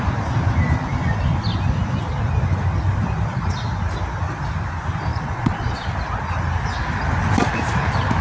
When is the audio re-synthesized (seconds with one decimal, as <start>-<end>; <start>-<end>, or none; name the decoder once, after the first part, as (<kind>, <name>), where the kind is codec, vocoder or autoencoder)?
5.1-5.9 (vocoder, Vocos)